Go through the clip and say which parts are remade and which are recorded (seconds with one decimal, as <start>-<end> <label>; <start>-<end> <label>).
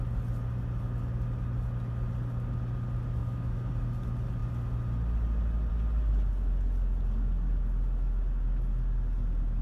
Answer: 0.0-3.2 recorded; 3.2-3.7 remade; 3.7-9.6 recorded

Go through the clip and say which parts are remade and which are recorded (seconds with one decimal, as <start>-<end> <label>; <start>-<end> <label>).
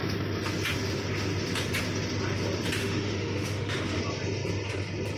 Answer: 0.0-2.8 recorded; 2.8-4.0 remade; 4.0-5.2 recorded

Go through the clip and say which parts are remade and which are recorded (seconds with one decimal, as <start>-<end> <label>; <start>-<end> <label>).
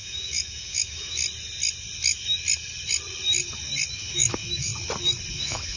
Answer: 0.0-1.2 remade; 1.2-3.9 recorded; 3.9-4.7 remade; 4.7-5.3 recorded; 5.3-5.8 remade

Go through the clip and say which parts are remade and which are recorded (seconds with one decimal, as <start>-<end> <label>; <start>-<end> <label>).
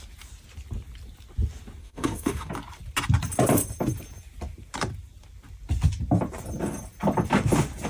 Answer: 0.0-1.8 recorded; 1.8-2.5 remade; 2.5-7.9 recorded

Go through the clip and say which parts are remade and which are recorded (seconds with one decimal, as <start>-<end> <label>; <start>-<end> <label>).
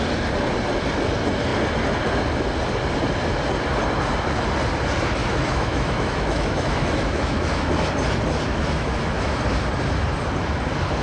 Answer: 0.0-5.2 recorded; 5.2-7.9 remade; 7.9-8.5 recorded; 8.5-9.4 remade; 9.4-11.0 recorded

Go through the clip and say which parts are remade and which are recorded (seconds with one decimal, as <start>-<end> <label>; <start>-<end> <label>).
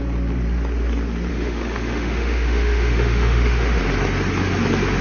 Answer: 0.0-1.3 recorded; 1.3-3.8 remade; 3.8-5.0 recorded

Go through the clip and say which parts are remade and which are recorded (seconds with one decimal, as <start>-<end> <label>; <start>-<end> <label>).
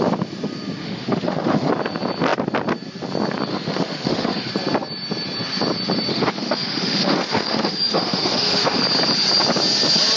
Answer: 0.0-0.8 recorded; 0.8-1.7 remade; 1.7-3.5 recorded; 3.5-4.5 remade; 4.5-6.1 recorded; 6.1-8.8 remade; 8.8-10.2 recorded